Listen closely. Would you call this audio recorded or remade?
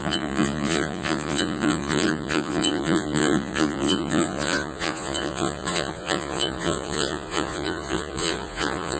remade